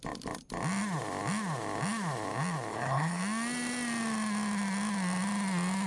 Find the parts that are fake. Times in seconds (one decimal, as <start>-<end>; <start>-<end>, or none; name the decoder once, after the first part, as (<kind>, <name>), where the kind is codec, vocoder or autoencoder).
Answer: 2.7-3.2 (codec, HILCodec)